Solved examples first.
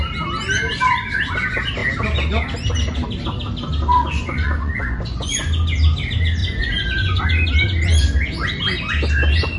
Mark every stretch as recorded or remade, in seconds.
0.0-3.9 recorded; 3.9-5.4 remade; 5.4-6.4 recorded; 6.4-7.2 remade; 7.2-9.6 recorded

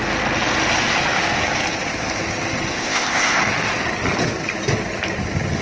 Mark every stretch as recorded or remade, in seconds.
0.0-2.7 recorded; 2.7-3.4 remade; 3.4-5.6 recorded

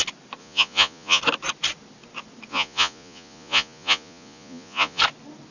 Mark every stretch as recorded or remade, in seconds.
0.0-0.4 recorded; 0.4-1.2 remade; 1.2-2.5 recorded; 2.5-5.0 remade; 5.0-5.5 recorded

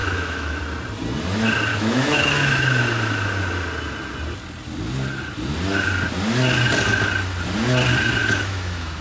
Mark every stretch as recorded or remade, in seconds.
0.0-0.6 remade; 0.6-1.7 recorded; 1.7-2.8 remade; 2.8-8.2 recorded; 8.2-9.0 remade